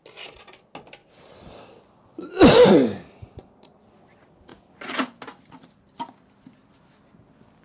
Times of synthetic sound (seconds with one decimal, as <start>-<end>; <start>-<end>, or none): none